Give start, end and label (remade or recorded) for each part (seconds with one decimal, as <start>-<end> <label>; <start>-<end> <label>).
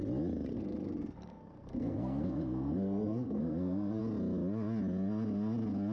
0.0-0.5 recorded; 0.5-4.0 remade; 4.0-5.9 recorded